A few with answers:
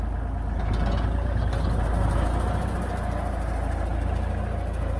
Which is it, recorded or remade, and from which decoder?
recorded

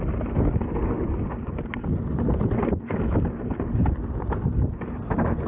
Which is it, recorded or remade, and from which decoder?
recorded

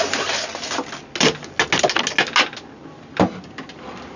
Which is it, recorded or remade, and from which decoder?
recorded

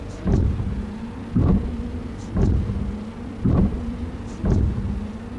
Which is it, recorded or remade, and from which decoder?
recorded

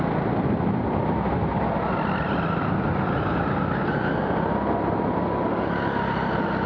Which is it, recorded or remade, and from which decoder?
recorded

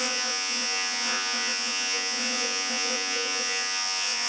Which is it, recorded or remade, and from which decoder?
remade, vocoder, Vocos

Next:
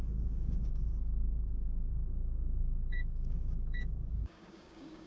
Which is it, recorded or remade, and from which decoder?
remade, codec, DAC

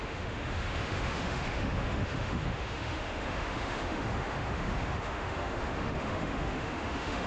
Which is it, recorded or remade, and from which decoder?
remade, autoencoder, DAC-VAE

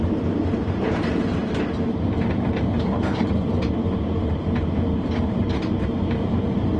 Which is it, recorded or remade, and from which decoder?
remade, vocoder, BigVGAN v2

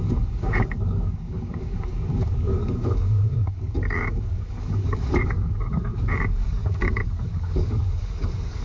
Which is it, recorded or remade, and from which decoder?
remade, codec, DAC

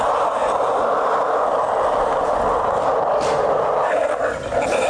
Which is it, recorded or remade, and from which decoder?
recorded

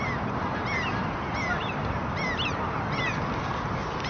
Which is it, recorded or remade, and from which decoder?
recorded